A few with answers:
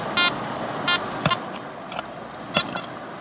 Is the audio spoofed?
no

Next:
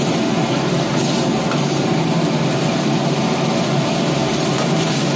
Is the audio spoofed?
no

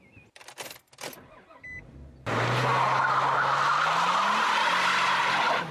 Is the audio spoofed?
no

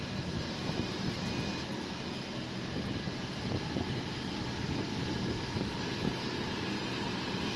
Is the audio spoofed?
no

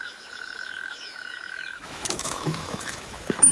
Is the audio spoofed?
yes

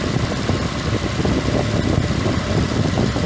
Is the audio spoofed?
no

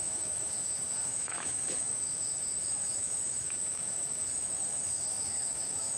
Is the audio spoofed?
yes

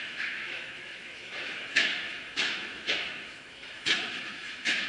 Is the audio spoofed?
yes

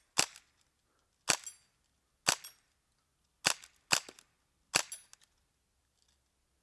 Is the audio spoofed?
no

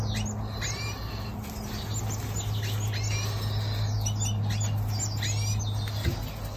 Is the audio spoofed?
no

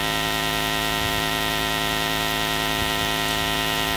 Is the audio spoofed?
no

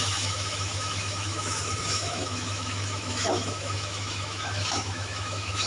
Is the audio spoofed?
yes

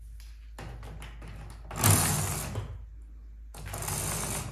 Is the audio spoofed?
no